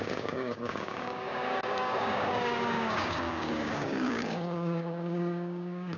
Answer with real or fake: fake